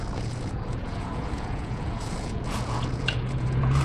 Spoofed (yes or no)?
yes